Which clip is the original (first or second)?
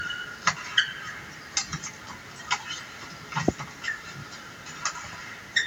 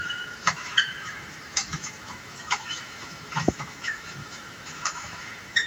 first